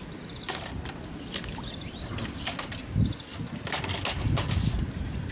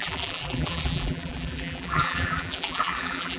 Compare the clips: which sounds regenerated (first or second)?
second